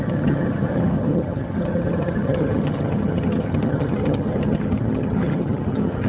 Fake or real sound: fake